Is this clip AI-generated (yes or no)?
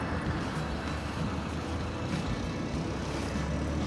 no